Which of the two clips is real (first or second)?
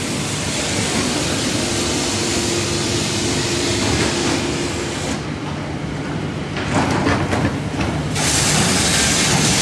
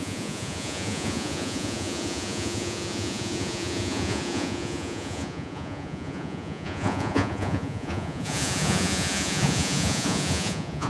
first